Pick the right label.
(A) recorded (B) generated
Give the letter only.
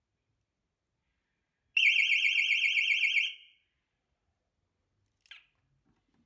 A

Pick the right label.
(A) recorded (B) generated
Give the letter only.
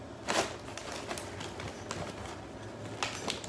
A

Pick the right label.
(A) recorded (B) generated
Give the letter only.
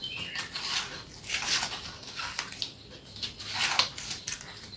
A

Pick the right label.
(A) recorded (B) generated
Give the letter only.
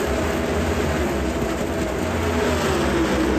A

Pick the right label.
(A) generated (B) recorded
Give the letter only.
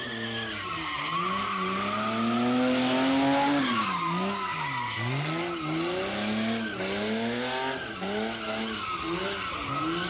B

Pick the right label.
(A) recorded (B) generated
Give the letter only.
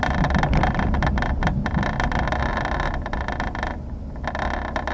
A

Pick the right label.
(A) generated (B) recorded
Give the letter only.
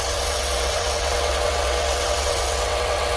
A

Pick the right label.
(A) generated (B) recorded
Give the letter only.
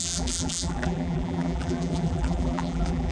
A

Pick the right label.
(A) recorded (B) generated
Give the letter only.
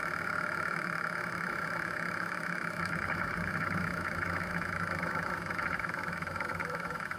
B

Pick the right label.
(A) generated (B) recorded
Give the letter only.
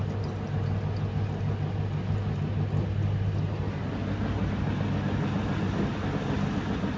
B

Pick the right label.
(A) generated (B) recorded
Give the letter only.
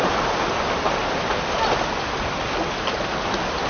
B